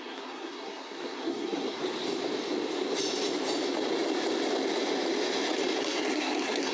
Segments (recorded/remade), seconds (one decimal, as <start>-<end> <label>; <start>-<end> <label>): 0.0-1.8 remade; 1.8-5.8 recorded; 5.8-6.7 remade